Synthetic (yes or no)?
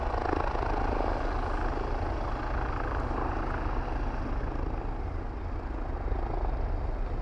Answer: no